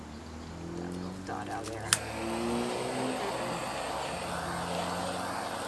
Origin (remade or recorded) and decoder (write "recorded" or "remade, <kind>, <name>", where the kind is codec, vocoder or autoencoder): recorded